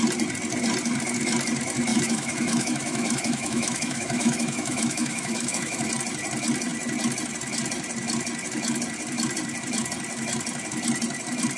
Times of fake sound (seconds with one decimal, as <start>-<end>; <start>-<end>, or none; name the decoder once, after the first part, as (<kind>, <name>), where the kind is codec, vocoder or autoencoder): 1.9-5.9 (autoencoder, DAC-VAE)